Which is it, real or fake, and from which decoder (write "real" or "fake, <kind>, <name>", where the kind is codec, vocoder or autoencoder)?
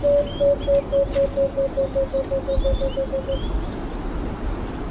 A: real